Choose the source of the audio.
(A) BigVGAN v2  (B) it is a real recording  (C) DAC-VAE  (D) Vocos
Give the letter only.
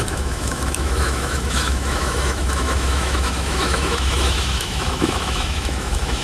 C